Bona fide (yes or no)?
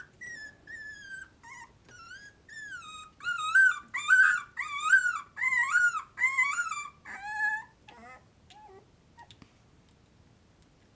yes